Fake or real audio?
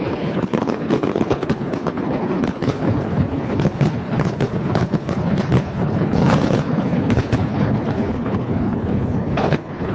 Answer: fake